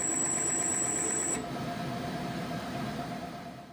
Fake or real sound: real